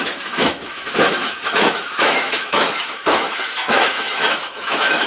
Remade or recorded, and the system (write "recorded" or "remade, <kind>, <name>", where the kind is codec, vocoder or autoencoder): remade, autoencoder, DAC-VAE